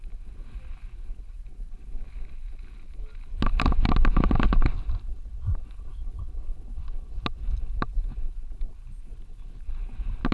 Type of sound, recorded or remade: recorded